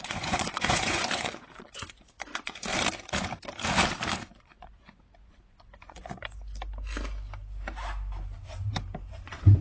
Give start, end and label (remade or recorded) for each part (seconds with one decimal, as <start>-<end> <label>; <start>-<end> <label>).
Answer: 0.0-2.7 remade; 2.7-4.4 recorded; 4.4-6.2 remade; 6.2-9.1 recorded; 9.1-9.6 remade